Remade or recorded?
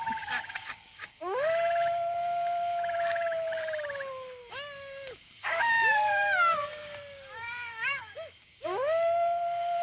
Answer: remade